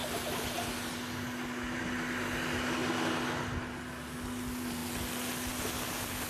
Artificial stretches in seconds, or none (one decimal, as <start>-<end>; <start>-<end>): none